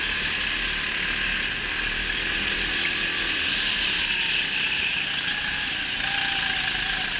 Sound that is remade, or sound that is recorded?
recorded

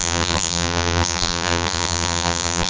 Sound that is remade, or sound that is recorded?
remade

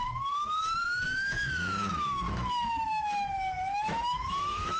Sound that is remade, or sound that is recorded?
remade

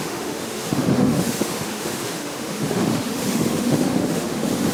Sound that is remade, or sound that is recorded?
remade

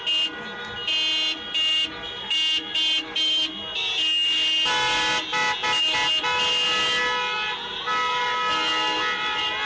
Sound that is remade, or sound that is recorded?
recorded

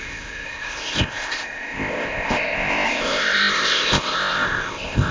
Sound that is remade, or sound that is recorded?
remade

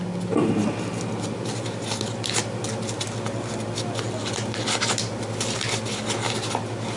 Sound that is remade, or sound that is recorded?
recorded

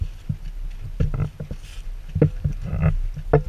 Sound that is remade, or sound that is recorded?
recorded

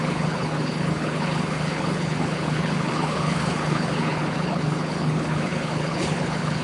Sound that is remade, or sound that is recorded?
remade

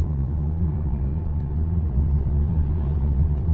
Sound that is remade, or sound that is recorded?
remade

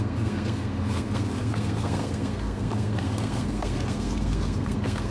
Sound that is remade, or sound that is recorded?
remade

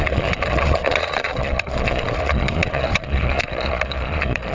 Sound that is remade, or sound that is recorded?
remade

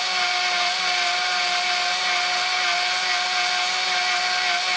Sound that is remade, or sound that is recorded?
recorded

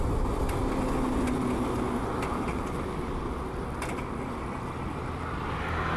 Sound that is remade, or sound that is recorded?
recorded